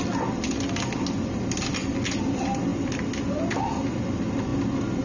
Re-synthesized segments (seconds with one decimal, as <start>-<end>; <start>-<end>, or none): none